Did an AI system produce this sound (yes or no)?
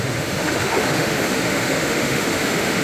yes